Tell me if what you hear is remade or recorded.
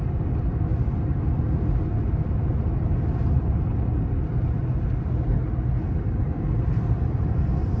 recorded